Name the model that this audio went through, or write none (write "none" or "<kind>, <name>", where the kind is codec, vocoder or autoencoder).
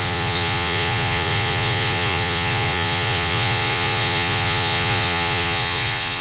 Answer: vocoder, Vocos